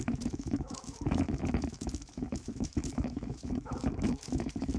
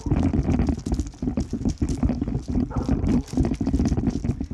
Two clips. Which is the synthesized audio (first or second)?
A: first